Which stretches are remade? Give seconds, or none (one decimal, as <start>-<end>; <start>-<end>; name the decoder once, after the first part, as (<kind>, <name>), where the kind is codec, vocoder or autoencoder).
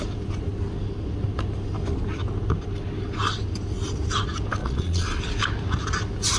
4.6-5.2 (vocoder, Vocos)